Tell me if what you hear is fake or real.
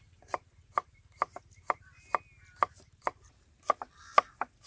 real